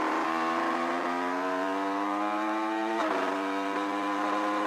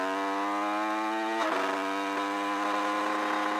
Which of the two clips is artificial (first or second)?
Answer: first